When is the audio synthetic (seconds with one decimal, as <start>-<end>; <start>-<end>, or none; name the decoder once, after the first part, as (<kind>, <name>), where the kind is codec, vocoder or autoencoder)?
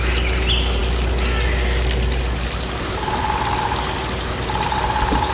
none